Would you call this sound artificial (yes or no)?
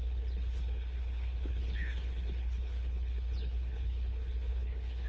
yes